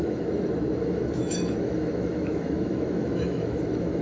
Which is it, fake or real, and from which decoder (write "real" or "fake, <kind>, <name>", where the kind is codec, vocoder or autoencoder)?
fake, autoencoder, DAC-VAE